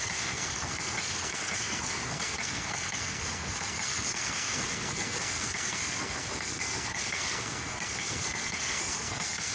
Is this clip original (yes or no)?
no